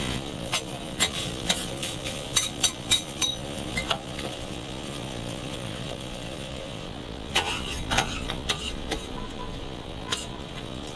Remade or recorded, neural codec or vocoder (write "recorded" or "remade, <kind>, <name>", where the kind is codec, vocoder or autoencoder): remade, vocoder, Vocos